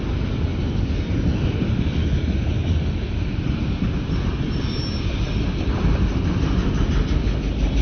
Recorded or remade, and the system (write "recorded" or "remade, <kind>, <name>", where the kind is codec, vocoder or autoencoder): recorded